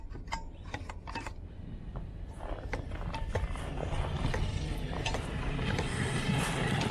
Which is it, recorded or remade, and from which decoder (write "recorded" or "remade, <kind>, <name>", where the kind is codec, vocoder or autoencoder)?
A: recorded